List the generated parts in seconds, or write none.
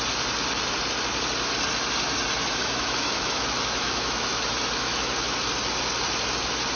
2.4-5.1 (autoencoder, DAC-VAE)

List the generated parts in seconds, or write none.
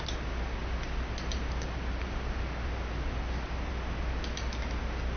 none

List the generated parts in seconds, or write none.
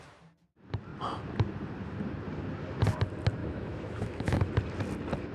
3.4-4.5 (autoencoder, DAC-VAE)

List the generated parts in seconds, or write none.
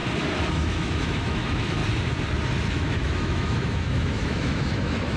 0.5-1.8 (autoencoder, DAC-VAE); 2.7-5.2